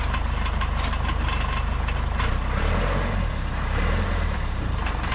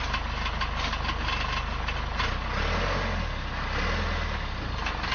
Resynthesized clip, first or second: first